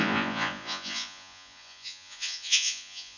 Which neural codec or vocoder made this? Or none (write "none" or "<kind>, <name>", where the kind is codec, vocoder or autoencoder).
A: vocoder, Vocos